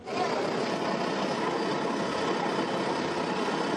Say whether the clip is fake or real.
real